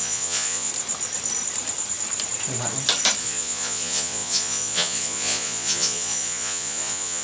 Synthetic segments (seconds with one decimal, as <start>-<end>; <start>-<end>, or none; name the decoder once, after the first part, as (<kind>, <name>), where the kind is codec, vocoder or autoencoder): 0.0-0.7 (vocoder, Vocos); 3.2-7.2